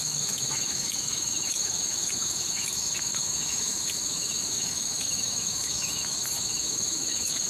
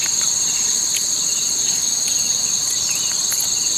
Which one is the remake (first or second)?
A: first